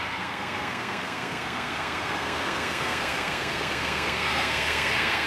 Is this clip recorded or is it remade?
remade